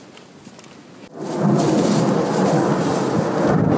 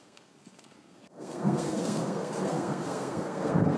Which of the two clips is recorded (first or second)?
first